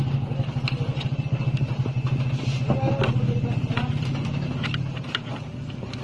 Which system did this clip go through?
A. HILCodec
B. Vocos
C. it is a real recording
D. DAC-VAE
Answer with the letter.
C